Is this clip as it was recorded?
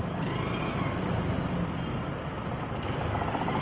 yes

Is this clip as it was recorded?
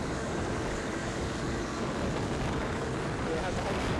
no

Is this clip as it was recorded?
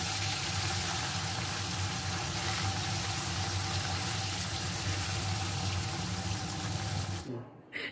yes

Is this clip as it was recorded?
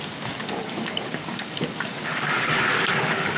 no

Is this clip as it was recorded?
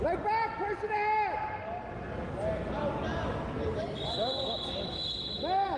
yes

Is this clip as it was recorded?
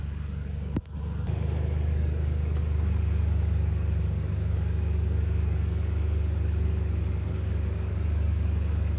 no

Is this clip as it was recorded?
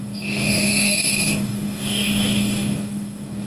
no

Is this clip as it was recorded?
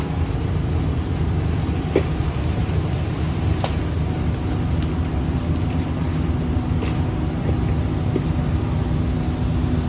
yes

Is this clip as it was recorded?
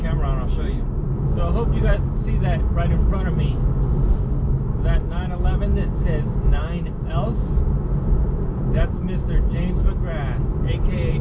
yes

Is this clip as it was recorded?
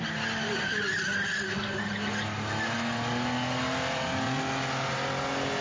yes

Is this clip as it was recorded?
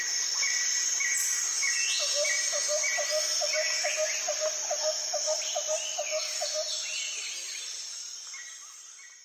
yes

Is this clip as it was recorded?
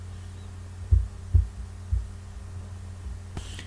yes